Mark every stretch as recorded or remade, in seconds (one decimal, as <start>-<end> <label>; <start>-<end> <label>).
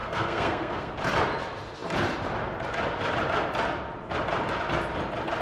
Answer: 0.0-0.9 remade; 0.9-5.4 recorded